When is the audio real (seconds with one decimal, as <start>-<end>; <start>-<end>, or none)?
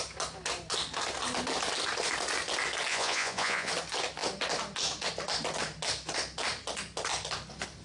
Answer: 0.0-2.9; 3.7-7.8